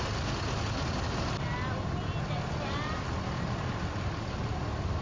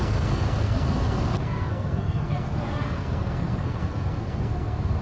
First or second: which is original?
first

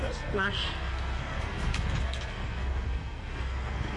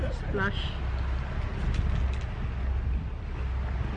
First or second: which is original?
second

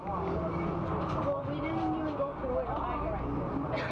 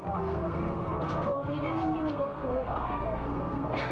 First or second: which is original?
first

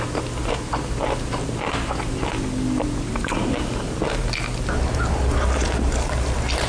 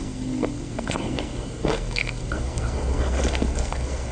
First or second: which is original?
first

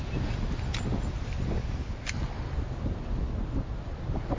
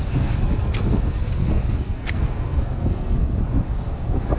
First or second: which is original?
first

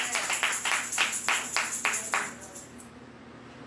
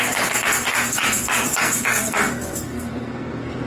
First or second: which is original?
first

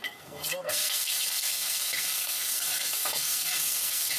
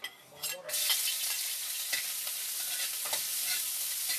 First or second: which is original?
second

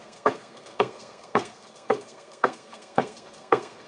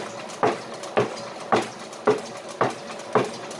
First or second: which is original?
second